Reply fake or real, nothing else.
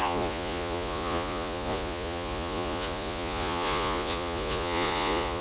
fake